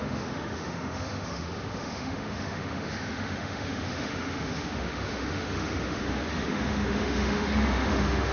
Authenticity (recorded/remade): remade